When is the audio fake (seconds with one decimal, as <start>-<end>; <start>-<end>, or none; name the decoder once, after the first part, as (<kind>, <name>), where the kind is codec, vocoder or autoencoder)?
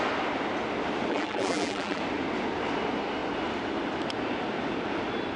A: 1.1-2.0 (vocoder, BigVGAN v2)